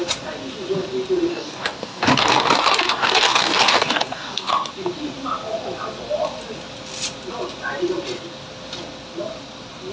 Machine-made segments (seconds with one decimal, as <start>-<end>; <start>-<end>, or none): 1.3-4.7

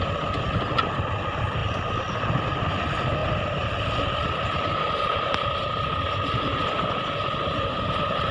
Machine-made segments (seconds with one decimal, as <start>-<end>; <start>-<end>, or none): none

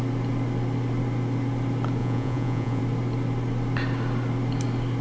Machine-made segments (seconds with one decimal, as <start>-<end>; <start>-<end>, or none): 2.0-2.8

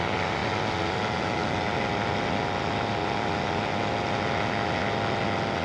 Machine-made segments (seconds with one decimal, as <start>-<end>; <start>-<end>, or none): none

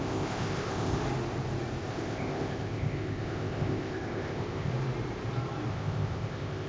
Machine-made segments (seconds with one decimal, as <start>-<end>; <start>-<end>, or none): 0.0-1.0; 1.9-4.7; 5.7-6.7